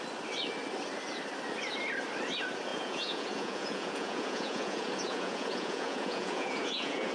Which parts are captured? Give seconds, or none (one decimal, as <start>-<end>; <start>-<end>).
0.0-2.7